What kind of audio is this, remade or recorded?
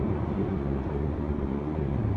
remade